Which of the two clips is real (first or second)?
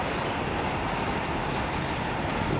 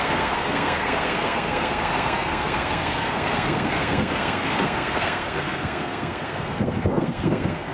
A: first